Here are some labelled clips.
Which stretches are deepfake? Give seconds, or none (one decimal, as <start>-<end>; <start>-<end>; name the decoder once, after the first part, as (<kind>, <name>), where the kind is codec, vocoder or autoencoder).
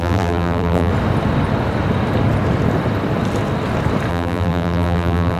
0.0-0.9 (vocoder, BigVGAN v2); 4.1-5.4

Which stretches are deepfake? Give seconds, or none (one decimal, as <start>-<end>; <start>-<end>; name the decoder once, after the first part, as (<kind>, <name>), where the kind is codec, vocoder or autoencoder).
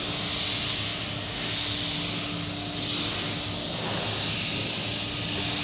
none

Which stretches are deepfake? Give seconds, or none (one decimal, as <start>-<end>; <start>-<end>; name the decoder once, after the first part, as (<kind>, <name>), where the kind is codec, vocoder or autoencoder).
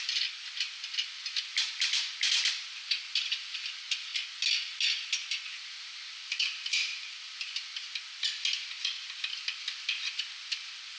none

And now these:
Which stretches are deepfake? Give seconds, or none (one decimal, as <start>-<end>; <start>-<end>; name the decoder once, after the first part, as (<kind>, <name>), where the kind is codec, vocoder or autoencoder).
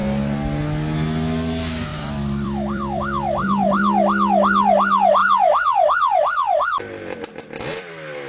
1.9-3.0 (vocoder, BigVGAN v2); 5.2-7.9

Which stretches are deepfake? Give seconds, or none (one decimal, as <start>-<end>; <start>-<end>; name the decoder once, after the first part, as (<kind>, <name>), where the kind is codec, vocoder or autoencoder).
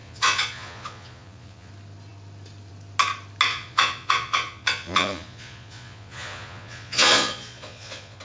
0.0-1.7 (vocoder, Vocos); 3.5-8.2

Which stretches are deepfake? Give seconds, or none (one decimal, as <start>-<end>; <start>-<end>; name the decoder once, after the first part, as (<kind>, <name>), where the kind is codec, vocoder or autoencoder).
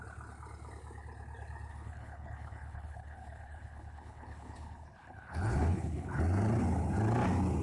1.7-6.2 (codec, HILCodec)